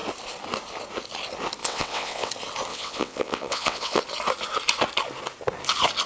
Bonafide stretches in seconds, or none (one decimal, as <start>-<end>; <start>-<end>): 0.0-1.6; 2.3-2.7; 4.0-6.1